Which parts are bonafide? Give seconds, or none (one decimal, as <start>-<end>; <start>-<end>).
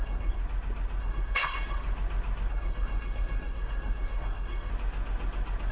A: 0.4-1.0; 1.8-2.5; 4.7-5.7